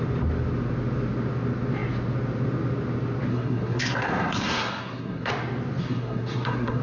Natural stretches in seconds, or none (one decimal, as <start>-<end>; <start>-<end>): 0.0-3.3; 5.3-5.8